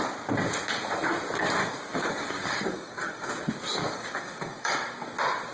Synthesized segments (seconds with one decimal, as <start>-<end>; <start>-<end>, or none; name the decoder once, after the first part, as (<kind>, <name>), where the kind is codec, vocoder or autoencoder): 1.6-3.3 (codec, DAC); 3.8-4.7